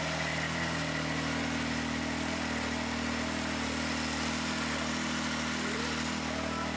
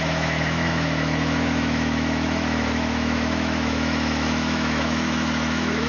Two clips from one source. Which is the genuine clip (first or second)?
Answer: first